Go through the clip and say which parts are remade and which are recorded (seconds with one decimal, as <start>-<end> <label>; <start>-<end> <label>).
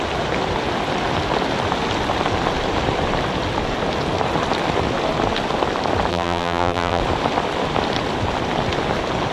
0.0-6.1 recorded; 6.1-7.0 remade; 7.0-9.3 recorded